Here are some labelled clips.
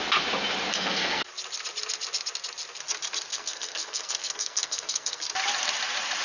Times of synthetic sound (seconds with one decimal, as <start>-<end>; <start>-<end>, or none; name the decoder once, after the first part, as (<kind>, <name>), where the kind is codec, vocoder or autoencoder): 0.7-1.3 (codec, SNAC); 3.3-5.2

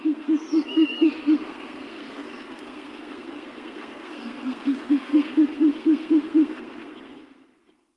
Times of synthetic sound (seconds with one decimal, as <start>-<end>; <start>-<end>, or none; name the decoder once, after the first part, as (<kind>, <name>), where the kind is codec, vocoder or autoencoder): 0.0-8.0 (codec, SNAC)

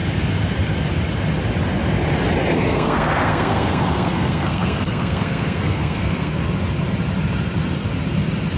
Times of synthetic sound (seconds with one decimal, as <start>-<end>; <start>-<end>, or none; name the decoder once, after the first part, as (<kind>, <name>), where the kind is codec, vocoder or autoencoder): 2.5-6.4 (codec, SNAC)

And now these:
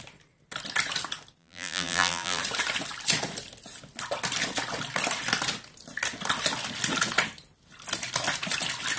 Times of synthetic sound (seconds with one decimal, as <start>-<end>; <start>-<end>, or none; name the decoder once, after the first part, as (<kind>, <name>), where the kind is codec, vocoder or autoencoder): 1.4-2.4 (vocoder, BigVGAN v2)

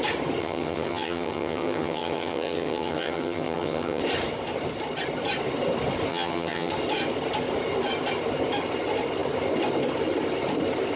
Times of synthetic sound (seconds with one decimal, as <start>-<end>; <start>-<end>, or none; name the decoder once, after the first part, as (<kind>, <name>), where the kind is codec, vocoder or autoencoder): 0.4-4.0 (vocoder, HiFi-GAN); 6.1-6.7

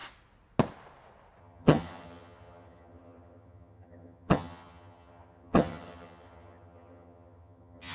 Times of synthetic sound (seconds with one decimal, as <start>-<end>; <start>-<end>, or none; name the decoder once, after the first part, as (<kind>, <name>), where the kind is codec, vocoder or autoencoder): 1.4-7.9 (vocoder, HiFi-GAN)